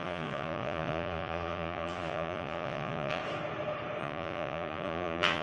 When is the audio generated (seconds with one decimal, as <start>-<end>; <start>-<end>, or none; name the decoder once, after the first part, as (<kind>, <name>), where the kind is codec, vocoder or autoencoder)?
0.0-3.2 (vocoder, Vocos); 4.0-5.4